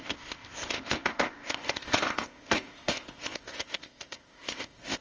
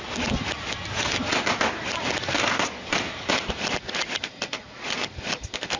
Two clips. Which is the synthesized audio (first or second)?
first